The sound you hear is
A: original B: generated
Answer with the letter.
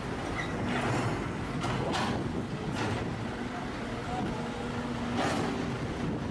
A